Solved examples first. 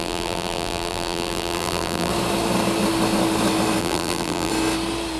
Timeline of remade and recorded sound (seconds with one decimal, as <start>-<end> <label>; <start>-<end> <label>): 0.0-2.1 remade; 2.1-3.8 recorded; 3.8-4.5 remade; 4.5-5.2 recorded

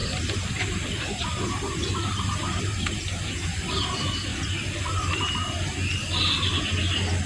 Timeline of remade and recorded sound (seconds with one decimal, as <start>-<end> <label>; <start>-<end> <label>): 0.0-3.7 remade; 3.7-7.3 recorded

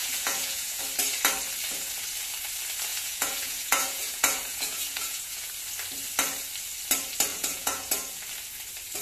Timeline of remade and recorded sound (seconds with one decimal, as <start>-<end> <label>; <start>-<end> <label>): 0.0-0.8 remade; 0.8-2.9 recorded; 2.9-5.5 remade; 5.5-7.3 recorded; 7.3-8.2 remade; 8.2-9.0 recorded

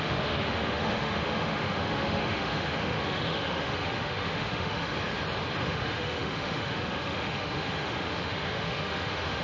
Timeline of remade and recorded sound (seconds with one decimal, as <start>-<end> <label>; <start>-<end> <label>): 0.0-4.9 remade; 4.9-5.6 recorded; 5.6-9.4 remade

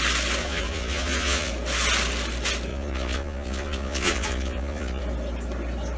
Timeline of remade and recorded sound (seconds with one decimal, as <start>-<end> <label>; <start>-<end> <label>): 0.0-0.4 recorded; 0.4-1.5 remade; 1.5-2.7 recorded; 2.7-5.0 remade; 5.0-6.0 recorded

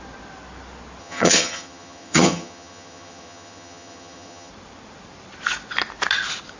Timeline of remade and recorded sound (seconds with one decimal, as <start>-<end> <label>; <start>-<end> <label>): 0.0-1.0 recorded; 1.0-4.5 remade; 4.5-6.6 recorded